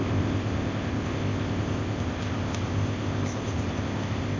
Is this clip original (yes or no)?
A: no